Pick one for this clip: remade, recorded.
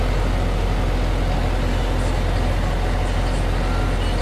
recorded